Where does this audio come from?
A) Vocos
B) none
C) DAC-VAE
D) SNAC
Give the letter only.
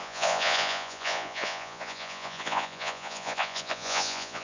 A